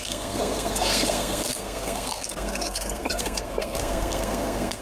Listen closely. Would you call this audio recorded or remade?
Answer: remade